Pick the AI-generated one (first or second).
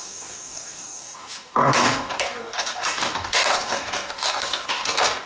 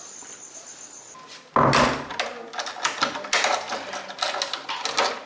first